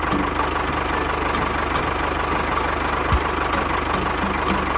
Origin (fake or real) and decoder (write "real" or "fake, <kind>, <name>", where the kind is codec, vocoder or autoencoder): real